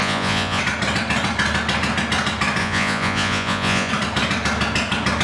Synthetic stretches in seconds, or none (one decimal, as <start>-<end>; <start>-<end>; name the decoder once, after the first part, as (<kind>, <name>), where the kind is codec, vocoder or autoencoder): 0.0-0.6 (vocoder, Vocos); 2.6-3.9

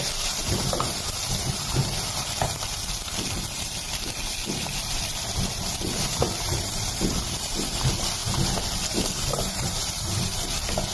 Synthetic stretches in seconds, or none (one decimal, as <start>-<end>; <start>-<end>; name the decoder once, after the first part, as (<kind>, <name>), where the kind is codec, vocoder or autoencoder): 0.0-8.2 (vocoder, BigVGAN v2); 8.9-10.9